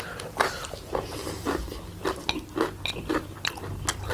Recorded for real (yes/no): yes